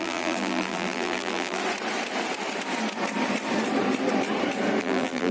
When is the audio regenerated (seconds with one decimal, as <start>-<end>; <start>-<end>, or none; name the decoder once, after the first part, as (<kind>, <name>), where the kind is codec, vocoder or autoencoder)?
0.0-1.6 (vocoder, BigVGAN v2); 4.8-5.3

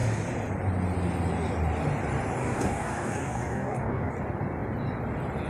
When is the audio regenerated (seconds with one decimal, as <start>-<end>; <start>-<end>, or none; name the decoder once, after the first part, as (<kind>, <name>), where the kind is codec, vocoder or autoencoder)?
2.4-4.1 (codec, DAC)

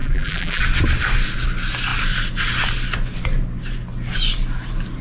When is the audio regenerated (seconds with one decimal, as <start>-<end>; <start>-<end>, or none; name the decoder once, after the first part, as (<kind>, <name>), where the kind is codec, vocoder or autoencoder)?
0.0-0.6 (vocoder, BigVGAN v2)